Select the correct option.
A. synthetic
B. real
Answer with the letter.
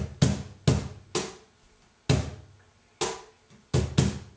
B